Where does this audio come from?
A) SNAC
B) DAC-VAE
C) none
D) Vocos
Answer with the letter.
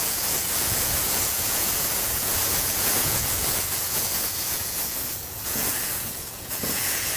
D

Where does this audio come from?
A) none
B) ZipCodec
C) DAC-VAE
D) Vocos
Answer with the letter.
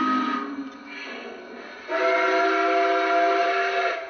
A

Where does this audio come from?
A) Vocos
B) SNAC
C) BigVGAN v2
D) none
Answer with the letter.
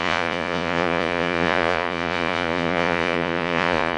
A